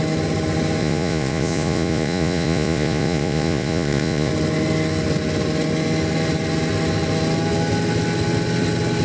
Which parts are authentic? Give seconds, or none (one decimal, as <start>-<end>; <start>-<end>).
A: 0.0-0.8; 4.3-9.0